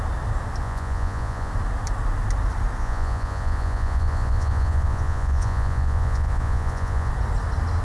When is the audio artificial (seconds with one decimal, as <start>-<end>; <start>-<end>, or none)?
0.6-1.5; 2.8-7.1